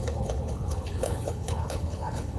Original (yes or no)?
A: no